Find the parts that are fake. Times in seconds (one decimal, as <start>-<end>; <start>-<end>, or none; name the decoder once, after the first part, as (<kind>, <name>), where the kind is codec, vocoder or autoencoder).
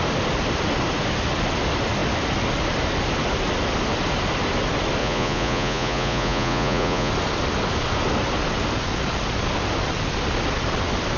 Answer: 5.0-7.1 (vocoder, Vocos)